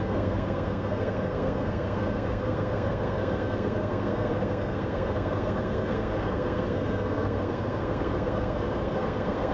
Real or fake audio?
fake